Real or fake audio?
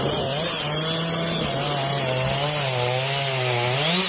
real